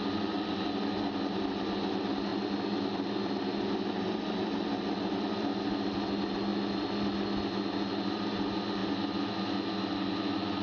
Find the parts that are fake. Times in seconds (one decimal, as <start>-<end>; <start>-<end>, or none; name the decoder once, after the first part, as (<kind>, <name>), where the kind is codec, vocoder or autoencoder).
none